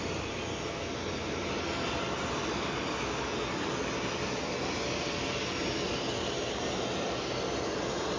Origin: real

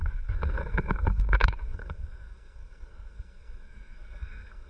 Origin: fake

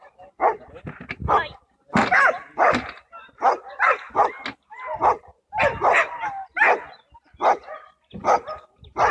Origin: real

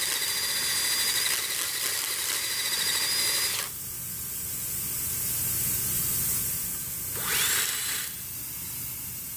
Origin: real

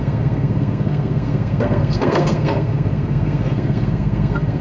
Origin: fake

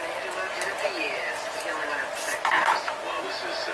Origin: real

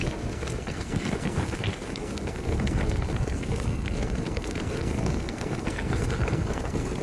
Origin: fake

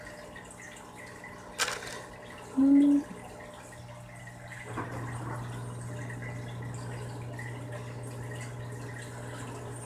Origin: real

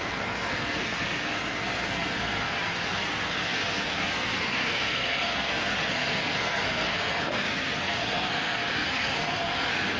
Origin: fake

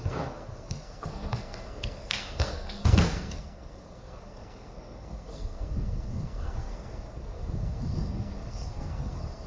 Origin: fake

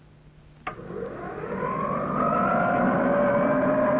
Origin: real